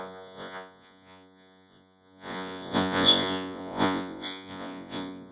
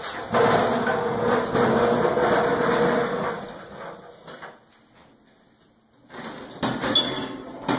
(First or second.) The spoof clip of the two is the first